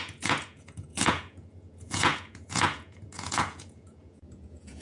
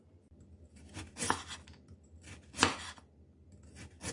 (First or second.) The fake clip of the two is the first